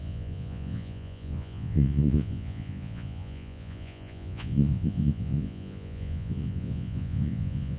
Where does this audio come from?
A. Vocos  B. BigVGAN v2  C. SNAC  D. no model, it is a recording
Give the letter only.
A